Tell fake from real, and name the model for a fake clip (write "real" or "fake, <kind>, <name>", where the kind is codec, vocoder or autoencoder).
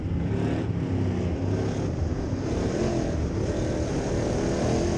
real